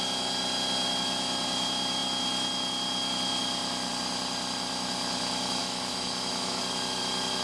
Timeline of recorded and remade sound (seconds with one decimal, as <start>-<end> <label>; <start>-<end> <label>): 0.0-5.6 recorded; 5.6-6.6 remade; 6.6-7.4 recorded

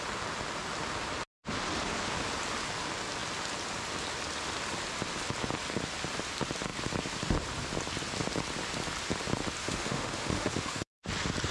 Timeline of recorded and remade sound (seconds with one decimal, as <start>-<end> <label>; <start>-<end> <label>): 0.0-9.6 recorded; 9.6-11.1 remade; 11.1-11.5 recorded

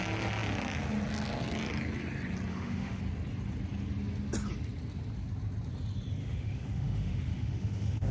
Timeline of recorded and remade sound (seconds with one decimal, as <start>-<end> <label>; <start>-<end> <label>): 0.0-2.5 recorded; 2.5-3.0 remade; 3.0-6.2 recorded; 6.2-8.1 remade

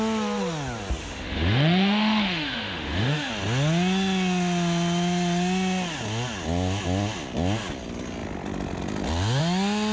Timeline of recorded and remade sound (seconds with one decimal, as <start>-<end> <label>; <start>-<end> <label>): 0.0-1.0 recorded; 1.0-3.3 remade; 3.3-9.9 recorded